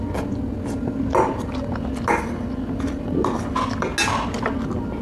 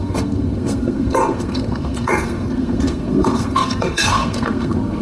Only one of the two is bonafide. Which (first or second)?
first